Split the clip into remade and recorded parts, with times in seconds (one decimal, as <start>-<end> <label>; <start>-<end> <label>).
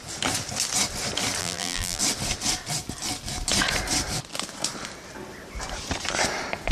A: 0.0-1.4 recorded; 1.4-2.0 remade; 2.0-6.7 recorded